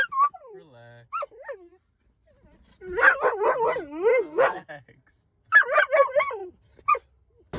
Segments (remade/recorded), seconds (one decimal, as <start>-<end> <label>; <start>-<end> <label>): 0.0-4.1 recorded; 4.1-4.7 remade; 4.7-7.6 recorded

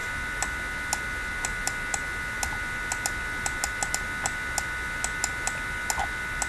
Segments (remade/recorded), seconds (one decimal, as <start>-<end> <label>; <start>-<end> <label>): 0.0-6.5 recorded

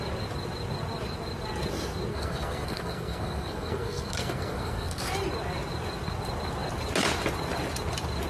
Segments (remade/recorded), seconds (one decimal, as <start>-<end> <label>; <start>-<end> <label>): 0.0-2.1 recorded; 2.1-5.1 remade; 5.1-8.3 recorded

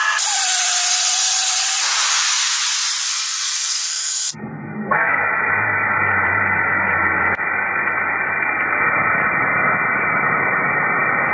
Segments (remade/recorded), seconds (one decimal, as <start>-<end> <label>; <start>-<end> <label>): 0.0-3.1 recorded; 3.1-5.2 remade; 5.2-11.3 recorded